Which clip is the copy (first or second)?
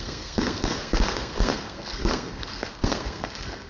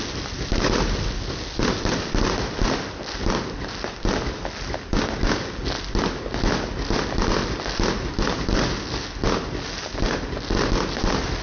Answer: first